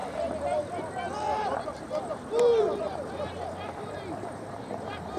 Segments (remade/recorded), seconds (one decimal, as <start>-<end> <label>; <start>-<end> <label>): 0.0-5.2 remade